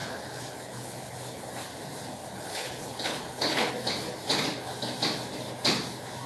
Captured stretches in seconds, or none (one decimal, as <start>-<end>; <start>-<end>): 1.5-2.2; 3.7-6.3